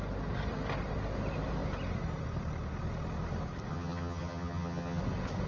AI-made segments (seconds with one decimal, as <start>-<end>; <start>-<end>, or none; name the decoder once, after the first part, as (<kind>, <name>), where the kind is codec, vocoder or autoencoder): 3.7-5.0 (vocoder, HiFi-GAN)